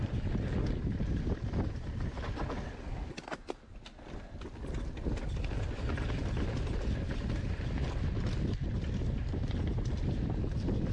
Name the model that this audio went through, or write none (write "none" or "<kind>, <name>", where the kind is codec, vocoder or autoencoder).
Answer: none